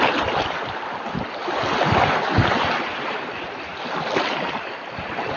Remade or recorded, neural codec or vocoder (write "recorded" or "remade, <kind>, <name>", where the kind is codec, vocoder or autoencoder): recorded